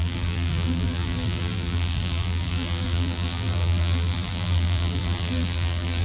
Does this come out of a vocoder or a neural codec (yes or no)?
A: yes